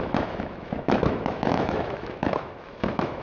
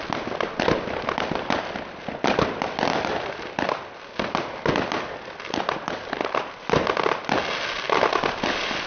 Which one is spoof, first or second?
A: first